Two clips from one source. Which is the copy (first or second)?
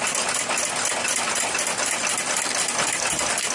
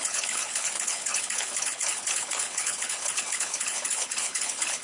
second